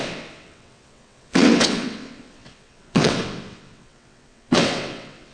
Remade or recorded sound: remade